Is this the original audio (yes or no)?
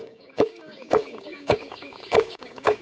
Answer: no